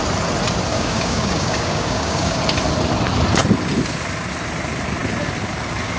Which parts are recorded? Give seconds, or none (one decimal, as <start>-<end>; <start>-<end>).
0.0-0.7; 2.4-6.0